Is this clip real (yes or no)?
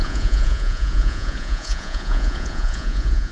no